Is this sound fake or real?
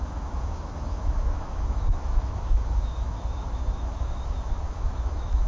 fake